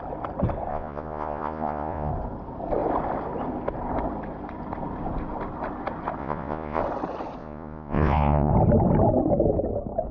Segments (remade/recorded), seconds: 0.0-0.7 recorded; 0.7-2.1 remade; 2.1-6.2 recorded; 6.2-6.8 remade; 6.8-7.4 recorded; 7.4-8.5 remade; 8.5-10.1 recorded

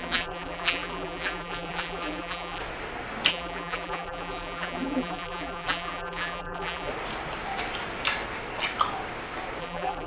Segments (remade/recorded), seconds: 0.0-2.6 remade; 2.6-3.3 recorded; 3.3-6.9 remade; 6.9-9.6 recorded; 9.6-10.1 remade

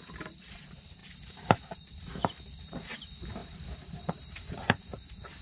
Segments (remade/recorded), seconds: 0.0-5.4 remade

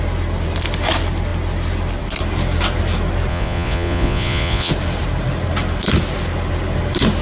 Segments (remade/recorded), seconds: 0.0-3.3 recorded; 3.3-4.7 remade; 4.7-7.2 recorded

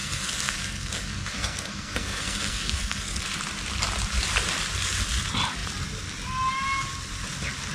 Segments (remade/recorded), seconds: 0.0-3.2 remade; 3.2-7.7 recorded